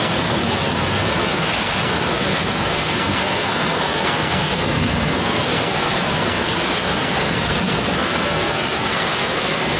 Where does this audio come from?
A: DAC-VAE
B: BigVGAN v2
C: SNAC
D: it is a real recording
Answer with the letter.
C